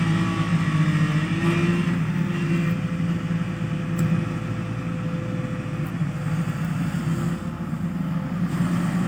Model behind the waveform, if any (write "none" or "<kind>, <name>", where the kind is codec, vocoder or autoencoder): none